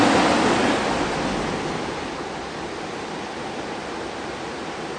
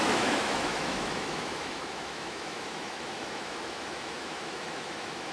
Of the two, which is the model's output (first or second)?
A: second